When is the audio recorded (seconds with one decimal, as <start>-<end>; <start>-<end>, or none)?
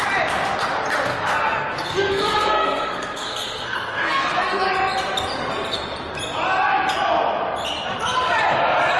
0.0-1.1; 4.7-9.0